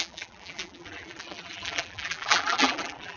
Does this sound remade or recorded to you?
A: remade